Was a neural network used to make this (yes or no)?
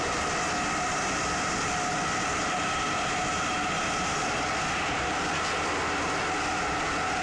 no